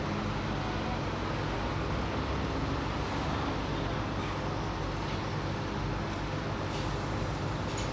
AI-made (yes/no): no